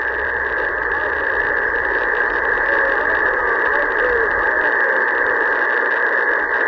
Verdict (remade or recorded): recorded